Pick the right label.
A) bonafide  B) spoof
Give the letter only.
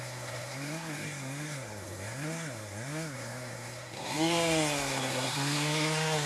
B